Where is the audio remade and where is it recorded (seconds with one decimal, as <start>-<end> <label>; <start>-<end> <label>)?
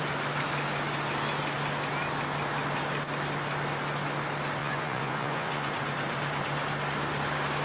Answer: 0.0-4.6 recorded; 4.6-5.7 remade; 5.7-7.6 recorded